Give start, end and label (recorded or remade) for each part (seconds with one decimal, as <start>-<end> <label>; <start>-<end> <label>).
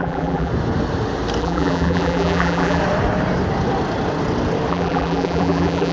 0.0-0.5 remade; 0.5-1.4 recorded; 1.4-2.8 remade; 2.8-4.7 recorded; 4.7-5.9 remade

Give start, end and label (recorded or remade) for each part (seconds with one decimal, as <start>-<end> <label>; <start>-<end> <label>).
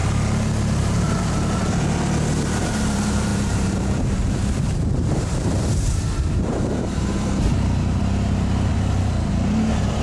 0.0-0.8 recorded; 0.8-1.6 remade; 1.6-2.6 recorded; 2.6-8.7 remade; 8.7-9.3 recorded; 9.3-10.0 remade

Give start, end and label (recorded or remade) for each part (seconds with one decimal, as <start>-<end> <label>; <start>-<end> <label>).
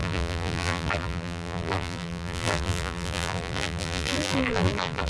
0.0-5.1 remade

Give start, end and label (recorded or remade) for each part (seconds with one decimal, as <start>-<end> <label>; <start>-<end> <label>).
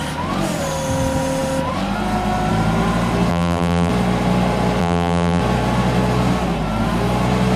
0.0-3.3 recorded; 3.3-3.9 remade; 3.9-4.8 recorded; 4.8-5.4 remade; 5.4-7.6 recorded